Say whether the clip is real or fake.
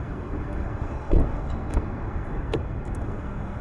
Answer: fake